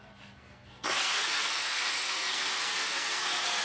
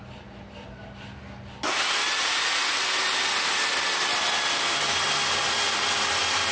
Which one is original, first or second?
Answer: second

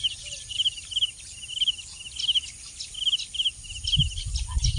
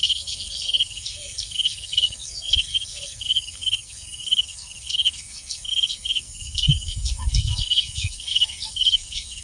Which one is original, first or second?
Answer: first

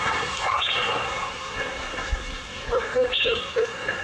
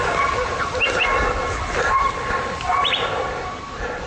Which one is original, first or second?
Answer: second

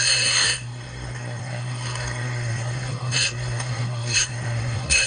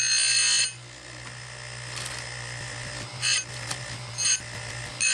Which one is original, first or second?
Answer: second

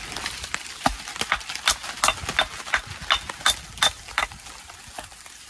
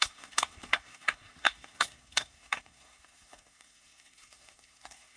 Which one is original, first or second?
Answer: first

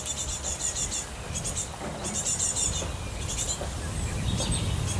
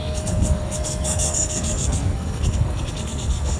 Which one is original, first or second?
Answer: first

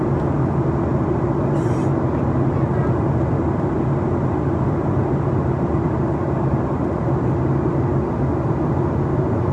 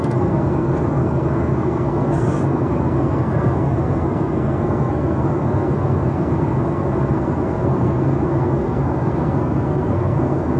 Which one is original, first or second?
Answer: first